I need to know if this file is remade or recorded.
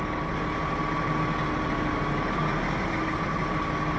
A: recorded